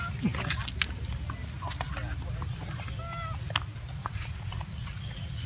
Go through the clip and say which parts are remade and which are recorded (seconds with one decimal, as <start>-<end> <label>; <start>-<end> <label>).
0.0-4.0 recorded; 4.0-5.5 remade